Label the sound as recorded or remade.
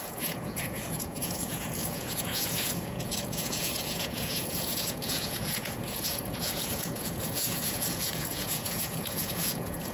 remade